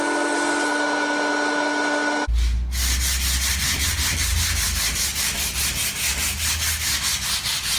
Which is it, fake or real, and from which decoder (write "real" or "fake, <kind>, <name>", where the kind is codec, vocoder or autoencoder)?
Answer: real